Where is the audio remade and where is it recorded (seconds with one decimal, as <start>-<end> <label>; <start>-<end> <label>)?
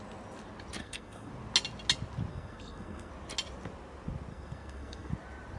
0.0-0.8 recorded; 0.8-1.3 remade; 1.3-2.3 recorded; 2.3-3.1 remade; 3.1-4.3 recorded; 4.3-5.1 remade; 5.1-5.6 recorded